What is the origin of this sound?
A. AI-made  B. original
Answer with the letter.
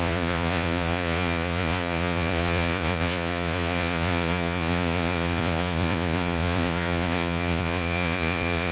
A